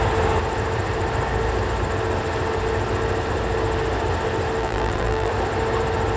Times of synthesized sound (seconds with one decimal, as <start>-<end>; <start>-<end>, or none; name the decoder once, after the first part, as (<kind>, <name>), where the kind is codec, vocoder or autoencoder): 4.6-5.3 (vocoder, BigVGAN v2)